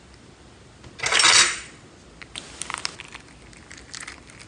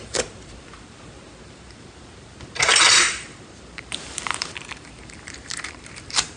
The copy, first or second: second